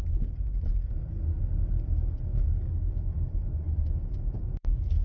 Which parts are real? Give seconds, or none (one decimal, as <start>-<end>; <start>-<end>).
0.0-2.3; 2.9-5.0